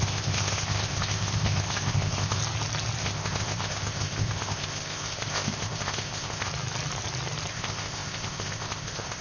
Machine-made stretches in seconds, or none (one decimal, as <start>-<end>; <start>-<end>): 0.0-2.4; 3.0-6.5; 7.5-9.2